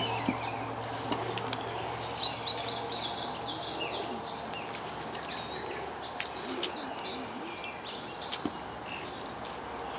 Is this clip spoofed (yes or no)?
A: no